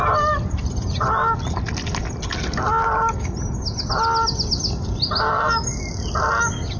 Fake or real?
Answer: real